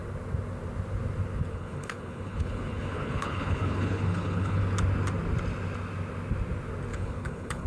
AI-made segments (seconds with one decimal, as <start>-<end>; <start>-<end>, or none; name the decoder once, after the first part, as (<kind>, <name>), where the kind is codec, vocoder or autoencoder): 1.5-4.6 (codec, HILCodec); 6.9-7.7